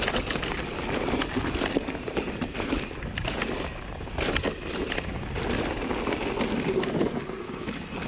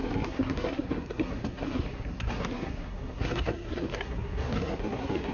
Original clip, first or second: first